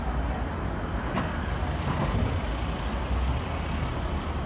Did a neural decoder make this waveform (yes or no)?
no